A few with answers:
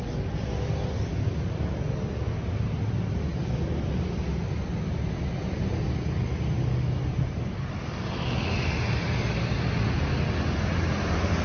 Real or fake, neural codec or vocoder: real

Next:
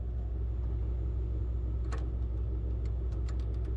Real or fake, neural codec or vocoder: real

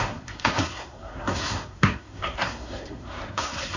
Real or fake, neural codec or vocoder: fake, codec, SNAC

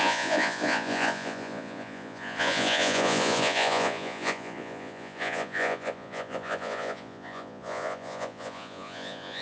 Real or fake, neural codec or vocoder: fake, vocoder, Vocos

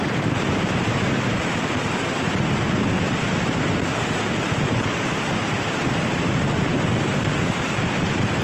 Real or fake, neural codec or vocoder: fake, vocoder, BigVGAN v2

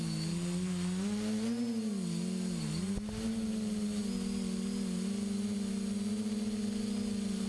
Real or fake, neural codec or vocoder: real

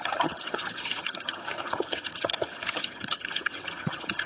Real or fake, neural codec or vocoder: fake, vocoder, HiFi-GAN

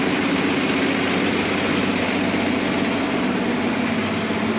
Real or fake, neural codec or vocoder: real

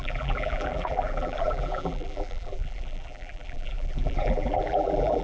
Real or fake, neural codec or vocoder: fake, vocoder, BigVGAN v2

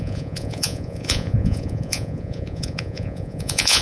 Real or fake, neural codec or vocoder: fake, vocoder, Vocos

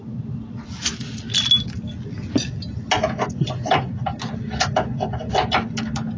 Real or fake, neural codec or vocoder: real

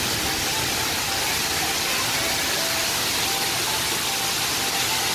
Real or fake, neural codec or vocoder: real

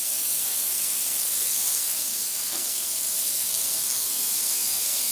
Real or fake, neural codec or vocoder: fake, codec, SNAC